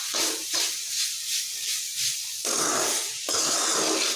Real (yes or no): yes